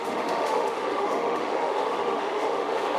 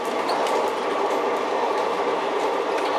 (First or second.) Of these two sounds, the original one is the second